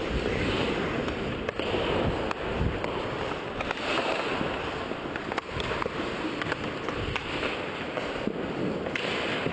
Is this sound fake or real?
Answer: real